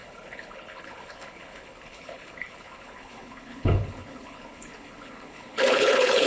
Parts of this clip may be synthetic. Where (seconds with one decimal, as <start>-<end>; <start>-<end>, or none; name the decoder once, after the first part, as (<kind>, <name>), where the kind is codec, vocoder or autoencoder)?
0.0-6.3 (codec, HILCodec)